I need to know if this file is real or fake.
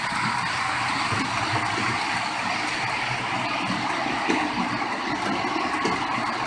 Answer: real